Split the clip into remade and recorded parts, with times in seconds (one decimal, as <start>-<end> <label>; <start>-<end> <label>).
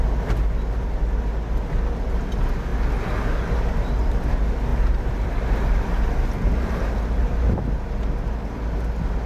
0.0-4.7 recorded; 4.7-7.7 remade; 7.7-9.3 recorded